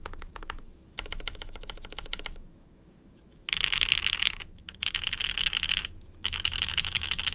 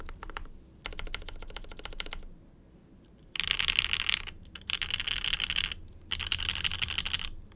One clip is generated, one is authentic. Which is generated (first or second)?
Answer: first